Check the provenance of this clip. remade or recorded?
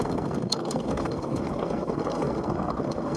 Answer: remade